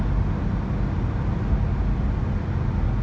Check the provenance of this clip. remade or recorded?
recorded